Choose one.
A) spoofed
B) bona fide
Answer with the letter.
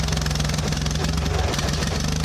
A